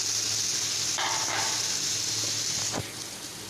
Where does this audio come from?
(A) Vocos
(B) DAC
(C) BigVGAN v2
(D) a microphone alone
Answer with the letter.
D